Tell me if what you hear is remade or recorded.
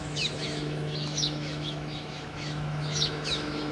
remade